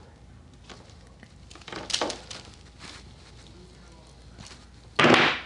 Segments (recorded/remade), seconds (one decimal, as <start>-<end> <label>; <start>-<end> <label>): 0.0-5.5 recorded